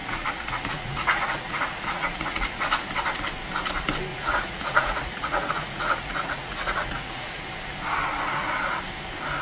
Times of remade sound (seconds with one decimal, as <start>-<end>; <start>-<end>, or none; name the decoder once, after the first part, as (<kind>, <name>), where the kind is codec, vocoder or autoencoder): 0.0-2.6 (vocoder, Vocos); 4.1-7.5